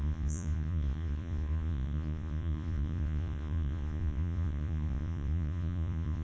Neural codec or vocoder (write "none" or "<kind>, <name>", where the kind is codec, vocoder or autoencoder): vocoder, Vocos